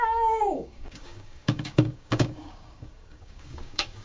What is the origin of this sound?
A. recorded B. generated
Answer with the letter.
B